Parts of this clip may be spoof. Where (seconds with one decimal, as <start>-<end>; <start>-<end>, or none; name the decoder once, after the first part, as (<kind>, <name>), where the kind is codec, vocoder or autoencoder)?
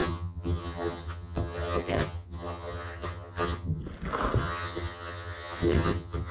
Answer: 0.0-3.8 (vocoder, HiFi-GAN); 4.4-6.3